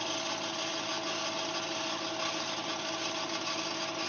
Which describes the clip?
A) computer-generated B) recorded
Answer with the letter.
B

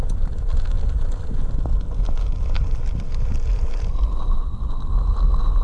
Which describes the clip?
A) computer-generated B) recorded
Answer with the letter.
B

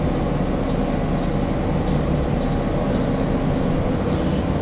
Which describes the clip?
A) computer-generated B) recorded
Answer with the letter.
B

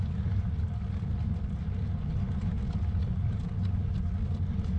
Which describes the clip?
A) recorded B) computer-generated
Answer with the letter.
A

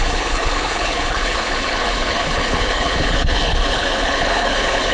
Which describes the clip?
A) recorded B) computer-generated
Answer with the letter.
B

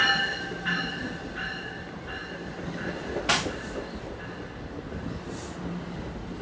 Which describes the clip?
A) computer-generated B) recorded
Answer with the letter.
B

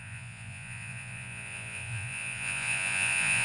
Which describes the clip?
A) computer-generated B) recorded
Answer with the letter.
A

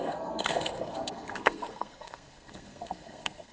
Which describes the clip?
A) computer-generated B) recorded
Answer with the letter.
A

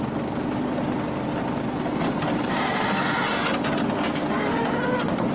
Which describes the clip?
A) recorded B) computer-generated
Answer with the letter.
A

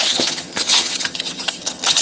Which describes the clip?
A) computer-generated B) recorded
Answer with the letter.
A